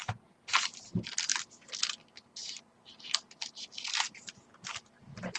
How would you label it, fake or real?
real